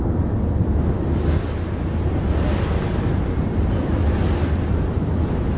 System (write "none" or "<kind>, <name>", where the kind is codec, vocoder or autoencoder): none